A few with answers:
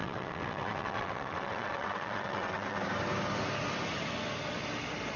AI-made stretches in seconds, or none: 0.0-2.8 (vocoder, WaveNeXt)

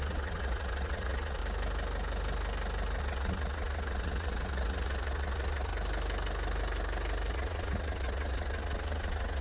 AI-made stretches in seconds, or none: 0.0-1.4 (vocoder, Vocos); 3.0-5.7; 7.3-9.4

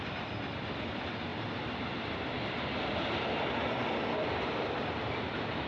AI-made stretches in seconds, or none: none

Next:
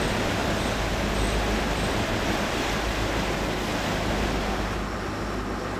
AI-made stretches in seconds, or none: none

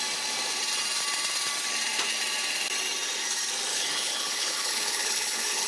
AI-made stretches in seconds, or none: 3.7-5.7 (codec, HILCodec)

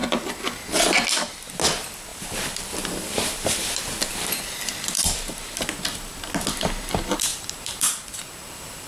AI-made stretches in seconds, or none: 2.1-4.6 (vocoder, BigVGAN v2); 7.3-8.9

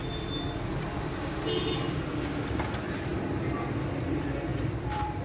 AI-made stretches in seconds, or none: 4.5-5.2 (vocoder, BigVGAN v2)